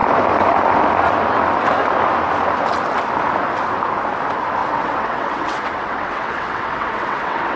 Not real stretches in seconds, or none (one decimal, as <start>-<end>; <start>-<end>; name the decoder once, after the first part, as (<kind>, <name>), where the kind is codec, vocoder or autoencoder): 4.6-7.6 (vocoder, WaveNeXt)